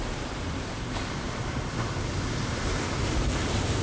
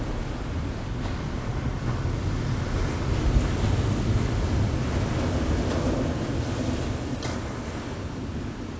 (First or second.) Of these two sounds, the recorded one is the second